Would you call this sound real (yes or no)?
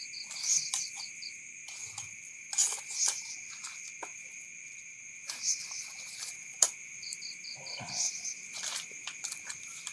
no